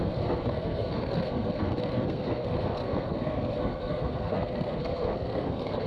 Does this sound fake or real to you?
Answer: fake